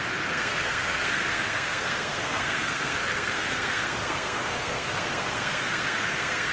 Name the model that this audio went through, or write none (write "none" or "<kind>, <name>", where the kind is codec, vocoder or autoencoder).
codec, SNAC